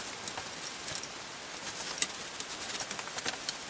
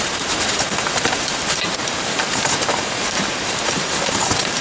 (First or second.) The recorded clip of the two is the first